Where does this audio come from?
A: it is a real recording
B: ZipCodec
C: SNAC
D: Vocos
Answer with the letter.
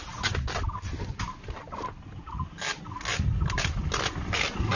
A